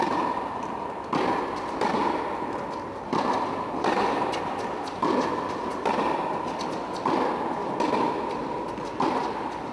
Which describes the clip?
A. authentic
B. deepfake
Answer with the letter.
A